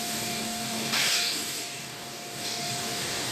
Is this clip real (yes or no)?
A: no